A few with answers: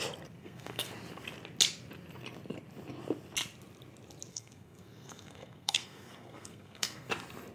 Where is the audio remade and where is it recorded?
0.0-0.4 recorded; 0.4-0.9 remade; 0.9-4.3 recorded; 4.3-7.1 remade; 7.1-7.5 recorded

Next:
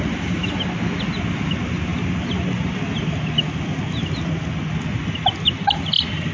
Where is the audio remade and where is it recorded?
0.0-6.3 recorded

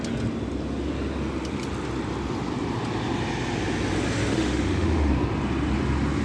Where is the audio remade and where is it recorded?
0.0-4.3 recorded; 4.3-5.1 remade; 5.1-6.2 recorded

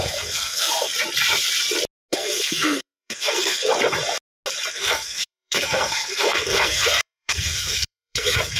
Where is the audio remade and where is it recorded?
0.0-0.9 remade; 0.9-2.1 recorded; 2.1-3.7 remade; 3.7-4.7 recorded; 4.7-8.6 remade

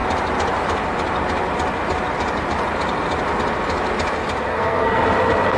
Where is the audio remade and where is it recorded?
0.0-4.5 recorded; 4.5-5.0 remade; 5.0-5.6 recorded